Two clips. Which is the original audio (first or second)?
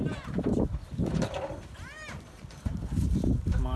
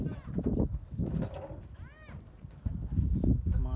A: second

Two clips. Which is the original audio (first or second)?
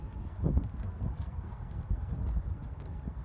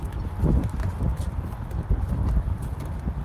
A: second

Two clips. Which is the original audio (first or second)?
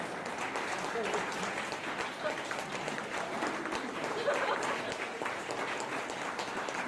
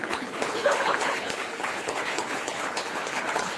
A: first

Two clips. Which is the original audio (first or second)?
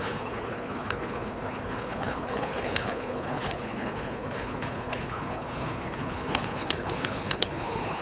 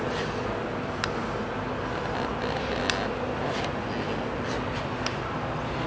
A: second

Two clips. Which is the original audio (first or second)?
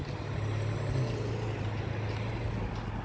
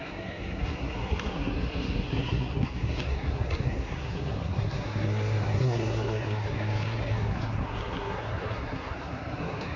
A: first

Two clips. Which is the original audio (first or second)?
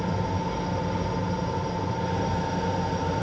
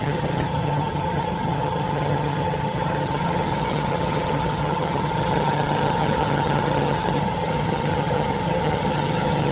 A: first